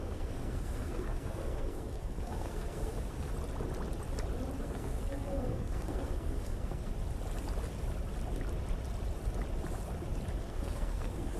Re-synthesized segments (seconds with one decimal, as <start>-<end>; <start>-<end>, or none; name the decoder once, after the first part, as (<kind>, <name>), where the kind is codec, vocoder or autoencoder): 0.0-3.3 (codec, SNAC); 4.6-6.9; 10.4-11.4